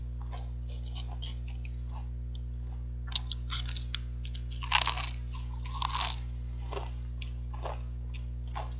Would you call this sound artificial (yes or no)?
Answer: no